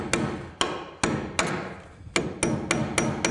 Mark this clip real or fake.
real